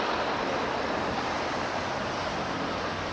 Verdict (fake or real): real